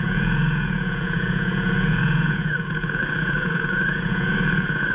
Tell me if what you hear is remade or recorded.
remade